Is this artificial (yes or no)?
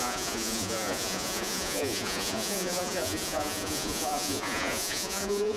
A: yes